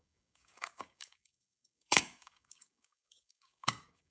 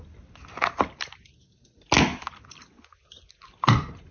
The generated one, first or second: first